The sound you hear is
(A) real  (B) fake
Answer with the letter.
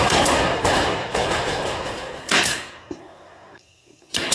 B